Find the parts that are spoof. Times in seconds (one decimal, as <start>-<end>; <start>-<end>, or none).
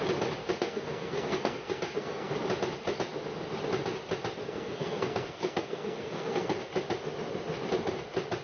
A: 0.4-2.3; 4.4-6.7